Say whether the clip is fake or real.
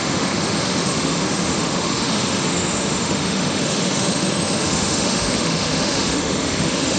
fake